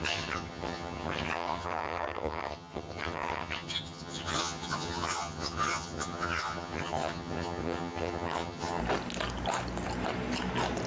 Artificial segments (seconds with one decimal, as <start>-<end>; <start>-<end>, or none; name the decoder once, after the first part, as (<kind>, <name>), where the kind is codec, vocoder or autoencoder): 0.0-8.8 (vocoder, HiFi-GAN)